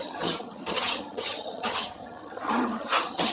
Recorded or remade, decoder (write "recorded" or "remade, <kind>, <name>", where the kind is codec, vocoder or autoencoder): remade, vocoder, HiFi-GAN